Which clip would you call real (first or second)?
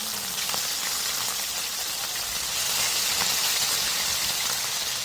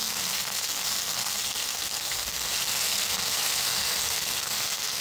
first